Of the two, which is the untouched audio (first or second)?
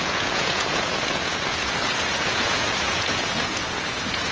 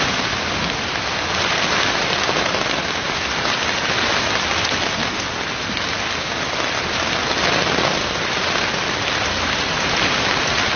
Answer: second